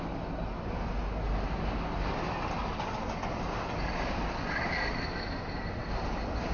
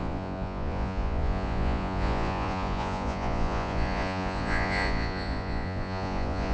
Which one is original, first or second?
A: first